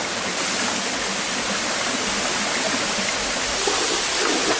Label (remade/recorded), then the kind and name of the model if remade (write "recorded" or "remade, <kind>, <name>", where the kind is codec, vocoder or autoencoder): recorded